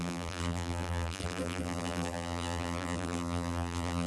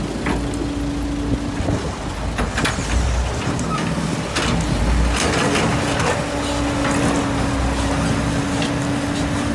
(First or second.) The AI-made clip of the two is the first